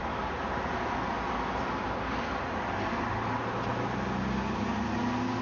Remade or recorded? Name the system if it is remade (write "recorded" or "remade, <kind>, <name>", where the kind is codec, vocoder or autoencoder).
recorded